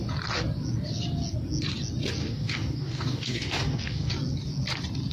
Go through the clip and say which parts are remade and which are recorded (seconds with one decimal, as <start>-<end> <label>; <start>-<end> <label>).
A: 0.0-2.2 recorded; 2.2-4.1 remade; 4.1-5.1 recorded